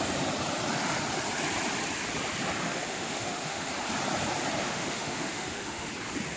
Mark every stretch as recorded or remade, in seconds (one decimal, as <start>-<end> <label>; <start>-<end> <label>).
0.0-2.6 recorded; 2.6-3.7 remade; 3.7-4.6 recorded; 4.6-5.9 remade; 5.9-6.4 recorded